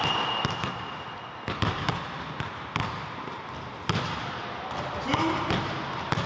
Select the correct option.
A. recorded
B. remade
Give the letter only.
A